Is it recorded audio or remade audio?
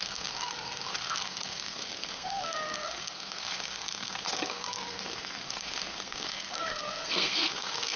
remade